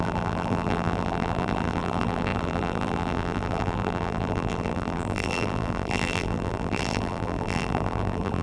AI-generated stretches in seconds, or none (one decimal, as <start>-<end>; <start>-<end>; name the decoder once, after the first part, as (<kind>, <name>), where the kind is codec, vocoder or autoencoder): 0.0-8.4 (vocoder, BigVGAN v2)